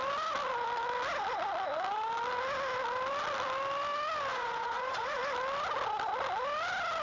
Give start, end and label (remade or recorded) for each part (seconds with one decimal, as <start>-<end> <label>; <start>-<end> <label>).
0.0-4.3 recorded; 4.3-5.2 remade; 5.2-7.0 recorded